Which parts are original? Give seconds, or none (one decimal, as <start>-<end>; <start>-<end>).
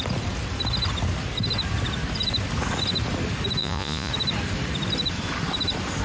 0.0-3.6; 4.1-6.0